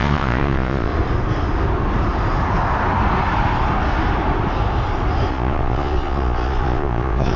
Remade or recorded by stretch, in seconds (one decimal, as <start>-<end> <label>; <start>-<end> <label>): 0.0-0.9 remade; 0.9-5.3 recorded; 5.3-7.4 remade